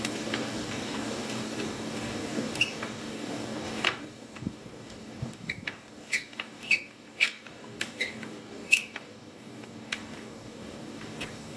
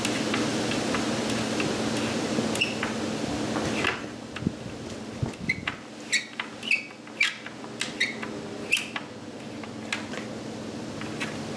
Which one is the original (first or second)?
second